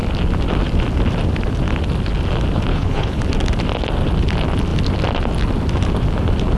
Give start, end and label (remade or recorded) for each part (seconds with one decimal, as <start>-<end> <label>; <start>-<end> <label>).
0.0-2.7 recorded; 2.7-3.2 remade; 3.2-6.6 recorded